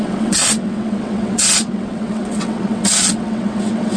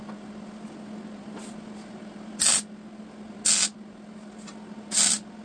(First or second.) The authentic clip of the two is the second